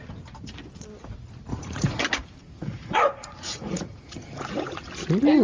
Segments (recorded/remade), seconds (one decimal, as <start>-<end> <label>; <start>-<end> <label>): 0.0-1.5 recorded; 1.5-2.0 remade; 2.0-2.4 recorded; 2.4-4.9 remade; 4.9-5.4 recorded